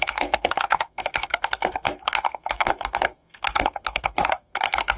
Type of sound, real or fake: fake